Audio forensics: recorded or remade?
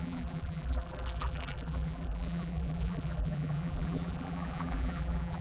remade